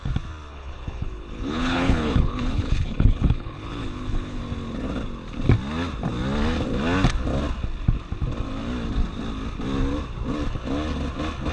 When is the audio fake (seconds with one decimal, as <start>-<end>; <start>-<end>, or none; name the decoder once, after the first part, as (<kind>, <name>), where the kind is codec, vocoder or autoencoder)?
0.5-4.4 (codec, HILCodec)